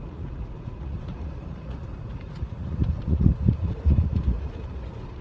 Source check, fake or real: fake